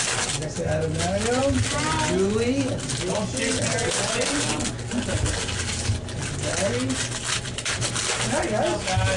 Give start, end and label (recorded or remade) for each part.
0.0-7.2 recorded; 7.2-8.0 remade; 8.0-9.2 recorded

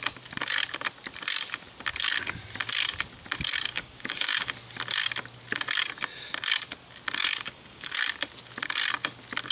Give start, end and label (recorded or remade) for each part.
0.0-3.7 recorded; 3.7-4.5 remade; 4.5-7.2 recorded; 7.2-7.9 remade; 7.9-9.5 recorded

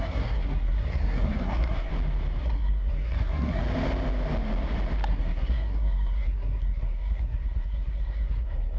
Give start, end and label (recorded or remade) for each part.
0.0-1.9 remade; 1.9-2.4 recorded; 2.4-3.6 remade; 3.6-5.1 recorded; 5.1-8.8 remade

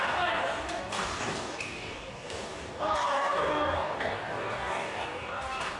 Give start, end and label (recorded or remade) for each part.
0.0-5.8 remade

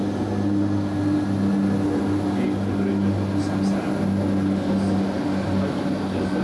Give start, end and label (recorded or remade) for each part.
0.0-6.4 recorded

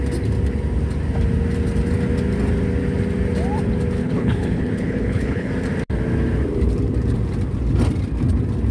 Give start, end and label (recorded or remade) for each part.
0.0-4.0 recorded; 4.0-5.5 remade; 5.5-8.7 recorded